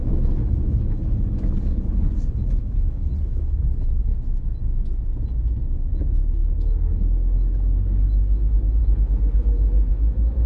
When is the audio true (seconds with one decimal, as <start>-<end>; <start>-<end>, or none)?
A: 4.1-5.6